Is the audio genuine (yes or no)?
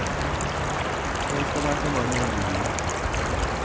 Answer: yes